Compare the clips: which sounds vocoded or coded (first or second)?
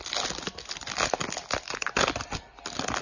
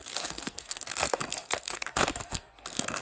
second